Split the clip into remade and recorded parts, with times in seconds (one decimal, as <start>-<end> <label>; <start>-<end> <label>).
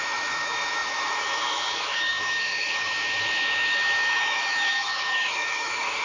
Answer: 0.0-6.0 remade